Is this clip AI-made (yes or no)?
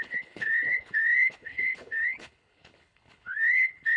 yes